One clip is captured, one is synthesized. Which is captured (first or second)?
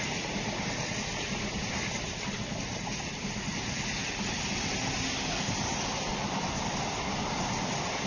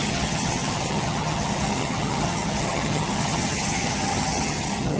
first